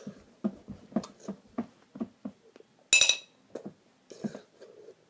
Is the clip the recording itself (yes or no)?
yes